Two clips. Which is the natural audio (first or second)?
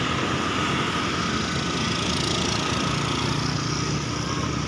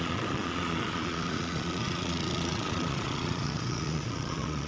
first